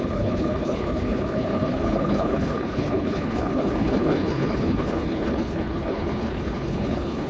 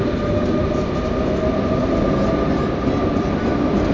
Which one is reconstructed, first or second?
first